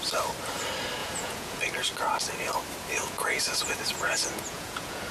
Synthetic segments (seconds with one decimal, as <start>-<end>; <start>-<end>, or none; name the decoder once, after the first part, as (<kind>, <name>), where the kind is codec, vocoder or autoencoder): 1.0-1.6 (vocoder, Vocos); 3.0-5.1